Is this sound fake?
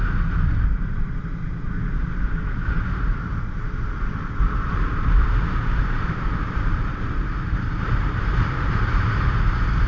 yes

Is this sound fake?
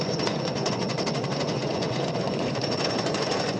yes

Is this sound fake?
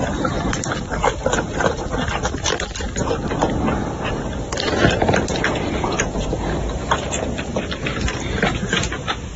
yes